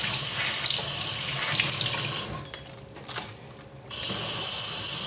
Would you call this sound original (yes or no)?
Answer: yes